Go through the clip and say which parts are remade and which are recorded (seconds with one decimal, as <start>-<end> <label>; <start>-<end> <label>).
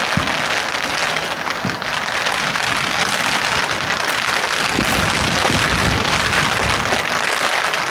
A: 0.0-7.9 recorded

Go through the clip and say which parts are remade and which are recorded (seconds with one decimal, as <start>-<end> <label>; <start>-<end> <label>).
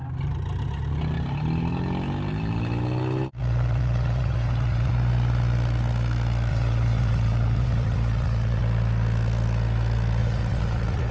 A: 0.0-3.4 recorded; 3.4-4.9 remade; 4.9-6.5 recorded; 6.5-8.6 remade; 8.6-10.2 recorded; 10.2-11.1 remade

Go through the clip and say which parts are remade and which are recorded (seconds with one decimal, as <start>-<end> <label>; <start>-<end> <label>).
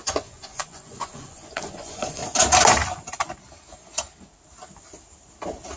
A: 0.0-2.2 remade; 2.2-5.8 recorded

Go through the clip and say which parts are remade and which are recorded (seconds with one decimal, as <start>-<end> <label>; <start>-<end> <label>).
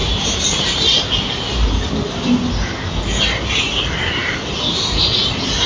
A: 0.0-5.7 recorded